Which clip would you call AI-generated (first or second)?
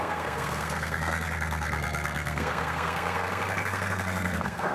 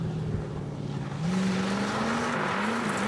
first